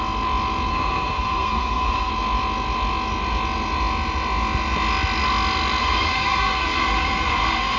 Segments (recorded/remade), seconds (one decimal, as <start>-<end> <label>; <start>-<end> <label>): 0.0-0.7 recorded; 0.7-2.1 remade; 2.1-5.8 recorded; 5.8-7.8 remade

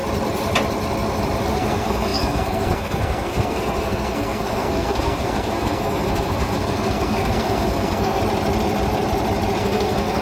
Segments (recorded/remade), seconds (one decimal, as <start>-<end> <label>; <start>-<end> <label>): 0.0-1.5 recorded; 1.5-8.2 remade; 8.2-9.6 recorded; 9.6-10.2 remade